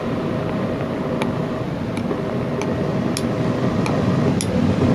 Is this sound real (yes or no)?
yes